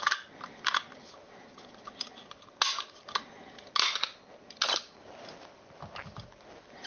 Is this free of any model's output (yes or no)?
yes